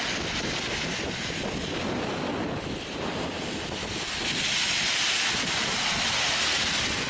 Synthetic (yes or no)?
no